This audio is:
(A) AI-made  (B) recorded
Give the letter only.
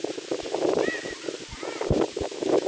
B